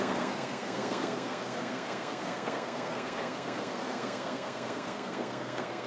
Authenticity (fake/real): fake